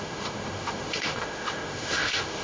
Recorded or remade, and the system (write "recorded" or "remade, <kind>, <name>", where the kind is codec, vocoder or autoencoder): remade, autoencoder, DAC-VAE